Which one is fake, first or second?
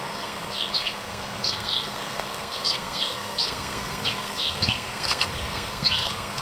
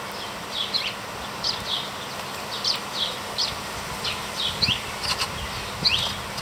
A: first